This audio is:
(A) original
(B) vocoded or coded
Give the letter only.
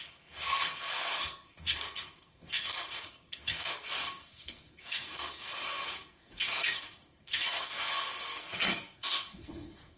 B